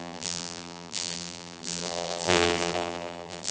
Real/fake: fake